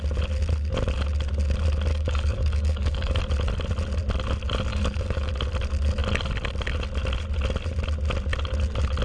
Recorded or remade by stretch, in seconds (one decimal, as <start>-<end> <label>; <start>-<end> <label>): 0.0-1.9 recorded; 1.9-3.2 remade; 3.2-4.7 recorded; 4.7-5.3 remade; 5.3-9.0 recorded